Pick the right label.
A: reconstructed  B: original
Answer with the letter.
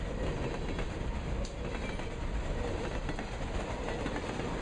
B